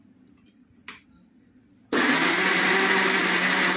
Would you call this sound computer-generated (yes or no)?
no